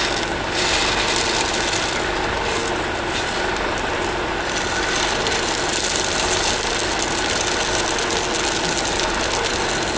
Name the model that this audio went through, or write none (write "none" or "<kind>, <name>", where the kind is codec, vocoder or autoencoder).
none